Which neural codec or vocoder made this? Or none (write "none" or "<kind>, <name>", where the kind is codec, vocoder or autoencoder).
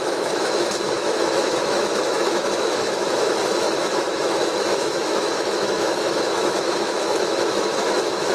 autoencoder, DAC-VAE